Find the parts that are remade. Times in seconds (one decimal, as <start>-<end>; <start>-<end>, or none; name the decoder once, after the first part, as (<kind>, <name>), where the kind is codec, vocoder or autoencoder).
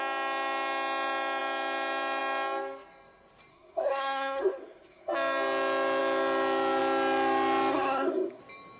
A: 3.5-5.1 (codec, SNAC); 7.7-8.4